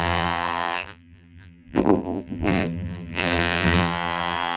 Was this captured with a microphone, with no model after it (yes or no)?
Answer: no